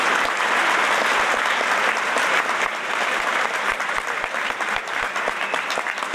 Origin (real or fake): real